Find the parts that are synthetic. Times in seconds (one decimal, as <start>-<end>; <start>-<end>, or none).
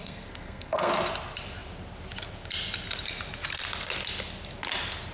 0.0-0.9